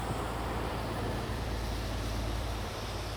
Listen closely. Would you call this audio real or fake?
fake